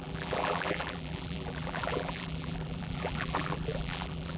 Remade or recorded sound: remade